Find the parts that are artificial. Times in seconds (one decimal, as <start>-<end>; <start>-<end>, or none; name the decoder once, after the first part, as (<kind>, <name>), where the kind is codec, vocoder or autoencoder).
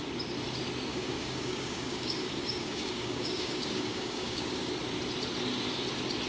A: 0.9-4.7 (codec, DAC)